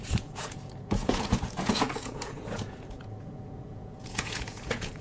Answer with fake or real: fake